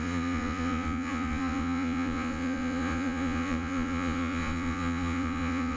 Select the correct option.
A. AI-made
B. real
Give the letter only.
A